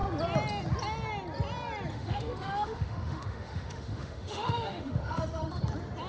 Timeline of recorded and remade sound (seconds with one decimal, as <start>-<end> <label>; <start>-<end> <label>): 0.0-1.9 recorded; 1.9-5.6 remade; 5.6-6.1 recorded